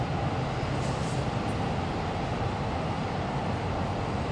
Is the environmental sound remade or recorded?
recorded